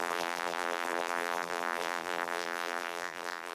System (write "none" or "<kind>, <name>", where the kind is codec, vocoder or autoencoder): vocoder, BigVGAN v2